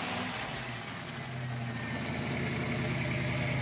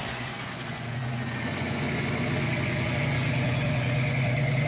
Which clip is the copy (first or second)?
second